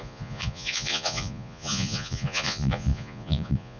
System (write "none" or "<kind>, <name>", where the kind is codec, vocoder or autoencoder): vocoder, Vocos